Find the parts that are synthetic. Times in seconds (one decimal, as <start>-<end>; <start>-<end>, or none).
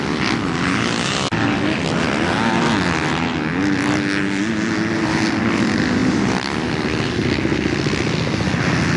6.0-6.7